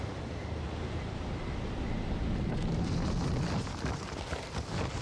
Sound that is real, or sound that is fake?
real